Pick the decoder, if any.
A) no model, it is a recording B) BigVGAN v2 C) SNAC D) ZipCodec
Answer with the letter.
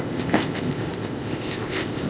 D